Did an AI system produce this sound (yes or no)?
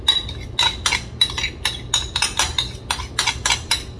no